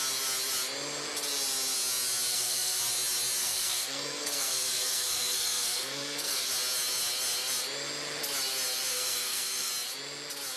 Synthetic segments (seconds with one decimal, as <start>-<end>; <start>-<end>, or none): 2.3-2.8; 3.4-6.5; 8.9-9.7